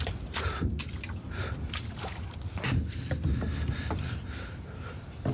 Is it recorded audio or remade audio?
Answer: recorded